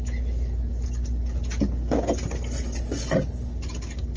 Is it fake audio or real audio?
real